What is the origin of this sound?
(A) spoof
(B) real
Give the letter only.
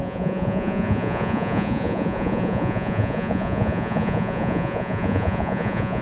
A